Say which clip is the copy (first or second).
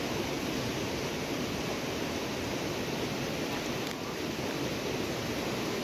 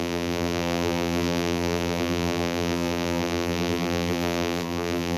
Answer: second